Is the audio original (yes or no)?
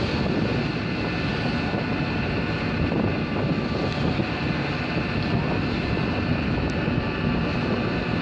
yes